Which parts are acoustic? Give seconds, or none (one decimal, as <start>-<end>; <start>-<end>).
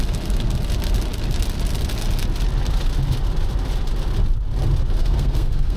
0.0-5.0